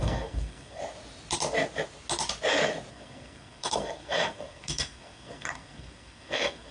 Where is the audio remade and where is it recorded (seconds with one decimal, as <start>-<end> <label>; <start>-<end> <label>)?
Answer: 0.0-0.8 remade; 0.8-2.9 recorded; 2.9-6.7 remade